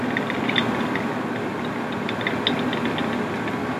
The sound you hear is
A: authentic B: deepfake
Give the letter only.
A